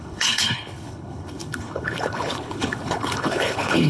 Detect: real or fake fake